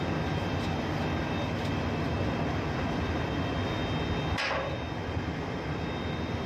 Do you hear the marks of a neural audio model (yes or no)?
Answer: no